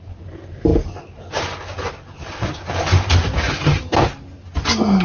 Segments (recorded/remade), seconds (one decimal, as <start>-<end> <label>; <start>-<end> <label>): 0.0-5.0 recorded